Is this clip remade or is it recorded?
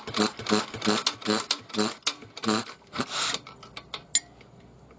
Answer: recorded